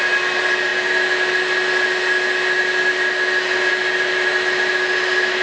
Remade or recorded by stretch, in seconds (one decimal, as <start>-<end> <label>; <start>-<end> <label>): 0.0-5.4 recorded